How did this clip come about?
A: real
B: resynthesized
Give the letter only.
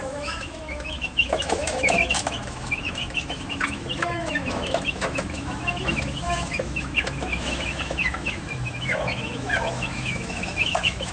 B